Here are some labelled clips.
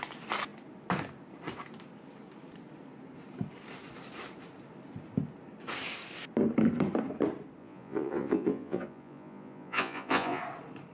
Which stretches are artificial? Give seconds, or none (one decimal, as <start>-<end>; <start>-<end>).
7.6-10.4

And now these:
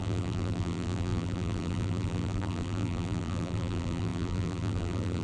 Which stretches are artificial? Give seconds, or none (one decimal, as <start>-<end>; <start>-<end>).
0.0-5.2

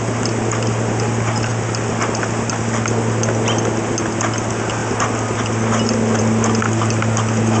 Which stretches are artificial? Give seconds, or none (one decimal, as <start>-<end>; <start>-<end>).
none